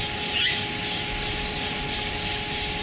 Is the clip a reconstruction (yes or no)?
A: no